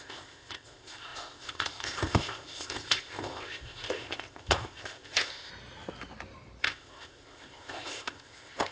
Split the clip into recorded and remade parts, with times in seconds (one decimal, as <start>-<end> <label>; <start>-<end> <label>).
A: 0.0-5.5 remade; 5.5-6.6 recorded; 6.6-8.7 remade